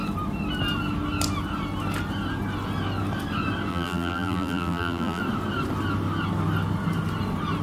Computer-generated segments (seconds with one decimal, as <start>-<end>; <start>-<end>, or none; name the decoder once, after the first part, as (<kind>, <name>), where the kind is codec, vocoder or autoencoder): 3.7-5.2 (vocoder, BigVGAN v2)